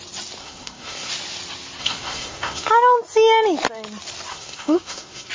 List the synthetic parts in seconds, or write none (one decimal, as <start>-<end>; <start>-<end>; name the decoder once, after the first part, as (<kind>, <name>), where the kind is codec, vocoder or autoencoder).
0.4-1.1 (codec, SNAC); 1.8-2.7; 4.3-5.3